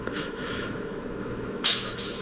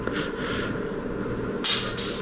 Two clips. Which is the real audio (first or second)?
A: second